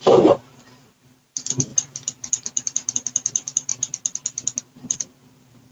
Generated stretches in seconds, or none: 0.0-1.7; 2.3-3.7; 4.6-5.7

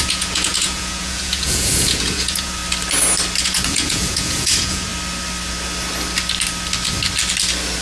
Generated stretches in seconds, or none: 0.0-2.6; 3.4-4.9

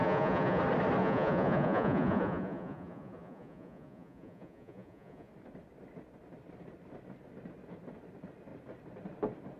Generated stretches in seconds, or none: 0.0-0.6; 1.0-5.3

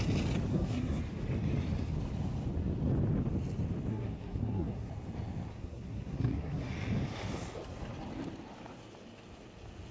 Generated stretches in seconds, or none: 0.5-1.0; 3.9-4.9; 5.5-6.7

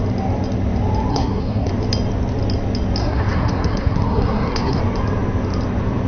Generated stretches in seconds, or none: 1.1-1.7; 3.0-4.8

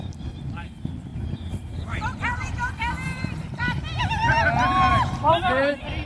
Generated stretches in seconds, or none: 0.0-4.4; 4.9-6.1